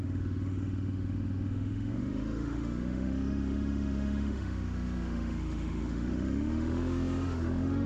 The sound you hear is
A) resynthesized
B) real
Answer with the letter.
A